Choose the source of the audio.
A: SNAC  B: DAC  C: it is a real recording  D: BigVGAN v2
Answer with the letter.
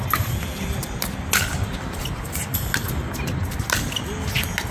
C